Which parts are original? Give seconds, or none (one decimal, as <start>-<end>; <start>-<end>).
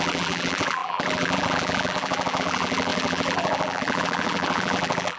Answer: none